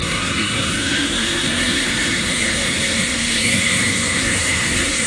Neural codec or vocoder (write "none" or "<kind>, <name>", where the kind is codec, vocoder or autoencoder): codec, SNAC